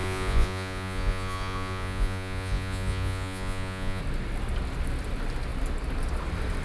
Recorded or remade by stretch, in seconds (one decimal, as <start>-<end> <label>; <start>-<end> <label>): 0.0-4.0 remade; 4.0-6.6 recorded